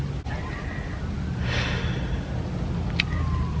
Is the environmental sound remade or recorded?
recorded